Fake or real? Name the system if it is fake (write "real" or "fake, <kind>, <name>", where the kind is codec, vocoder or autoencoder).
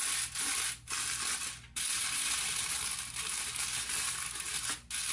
real